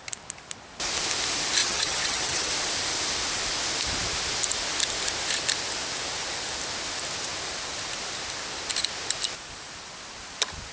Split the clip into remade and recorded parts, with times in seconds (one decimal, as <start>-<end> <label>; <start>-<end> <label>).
0.0-1.6 recorded; 1.6-2.5 remade; 2.5-10.7 recorded